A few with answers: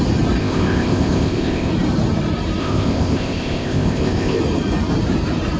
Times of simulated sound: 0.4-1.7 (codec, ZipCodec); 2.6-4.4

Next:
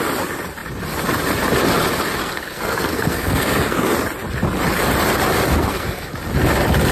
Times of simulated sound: 2.2-3.9 (codec, SNAC); 5.5-6.1

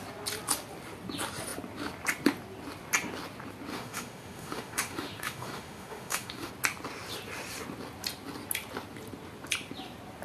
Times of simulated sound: 3.7-6.5 (autoencoder, DAC-VAE)

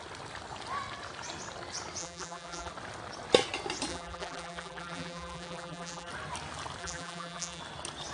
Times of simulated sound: 2.0-2.7 (vocoder, BigVGAN v2); 3.9-6.1; 6.8-7.6

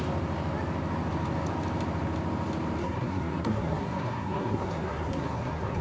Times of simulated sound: 2.8-5.8 (codec, SNAC)

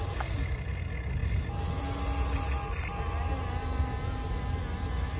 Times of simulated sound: none